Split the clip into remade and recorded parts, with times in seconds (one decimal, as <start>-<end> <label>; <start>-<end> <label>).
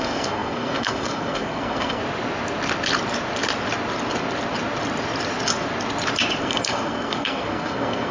0.0-2.0 remade; 2.0-6.4 recorded; 6.4-8.1 remade